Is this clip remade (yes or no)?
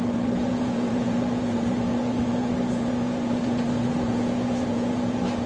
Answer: yes